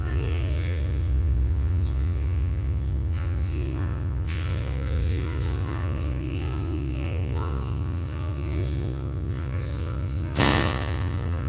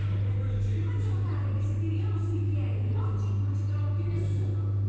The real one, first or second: second